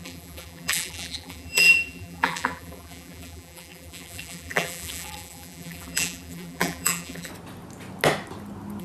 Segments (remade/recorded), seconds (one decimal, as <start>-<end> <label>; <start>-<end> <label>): 0.0-7.3 remade; 7.3-8.8 recorded